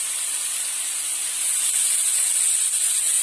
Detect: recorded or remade recorded